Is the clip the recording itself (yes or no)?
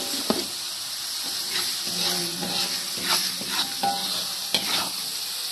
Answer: yes